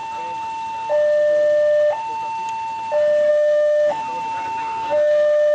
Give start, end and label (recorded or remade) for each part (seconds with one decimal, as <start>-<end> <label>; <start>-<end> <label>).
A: 0.0-3.3 recorded; 3.3-4.0 remade; 4.0-4.6 recorded; 4.6-5.5 remade